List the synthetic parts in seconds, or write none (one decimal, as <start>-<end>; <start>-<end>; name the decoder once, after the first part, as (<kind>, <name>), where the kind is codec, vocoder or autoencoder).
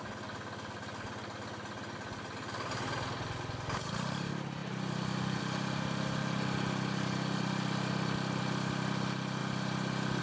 none